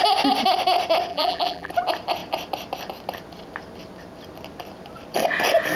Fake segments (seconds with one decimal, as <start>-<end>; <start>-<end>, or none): 1.1-1.7